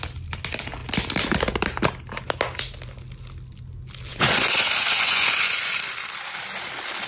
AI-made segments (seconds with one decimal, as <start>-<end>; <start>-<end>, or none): 4.1-5.9